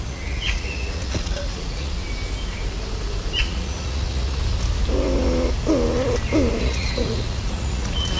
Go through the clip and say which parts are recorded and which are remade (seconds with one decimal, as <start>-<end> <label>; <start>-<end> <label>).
0.0-2.0 remade; 2.0-3.4 recorded; 3.4-4.4 remade; 4.4-6.6 recorded; 6.6-8.2 remade